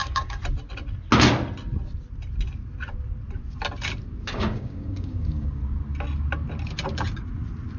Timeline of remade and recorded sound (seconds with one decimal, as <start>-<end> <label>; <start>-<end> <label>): 0.0-0.4 remade; 0.4-4.3 recorded; 4.3-5.6 remade; 5.6-7.8 recorded